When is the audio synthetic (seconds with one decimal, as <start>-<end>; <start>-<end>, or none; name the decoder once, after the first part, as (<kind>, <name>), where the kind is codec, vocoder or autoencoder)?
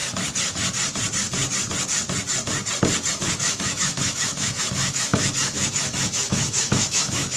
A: 3.1-7.4 (autoencoder, DAC-VAE)